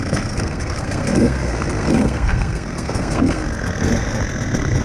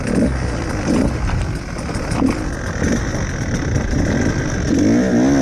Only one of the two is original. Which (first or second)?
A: second